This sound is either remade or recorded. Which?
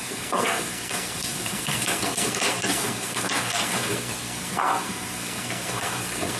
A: remade